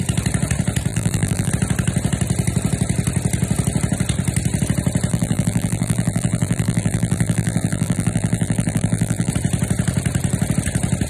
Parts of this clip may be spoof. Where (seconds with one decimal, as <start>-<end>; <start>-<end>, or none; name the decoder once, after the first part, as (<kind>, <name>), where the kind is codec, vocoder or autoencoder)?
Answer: 0.9-1.5 (vocoder, BigVGAN v2); 5.1-9.3